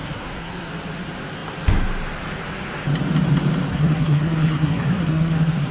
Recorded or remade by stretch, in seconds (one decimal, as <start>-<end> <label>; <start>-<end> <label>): 0.0-0.7 remade; 0.7-3.7 recorded; 3.7-5.7 remade